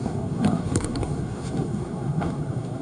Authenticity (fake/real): fake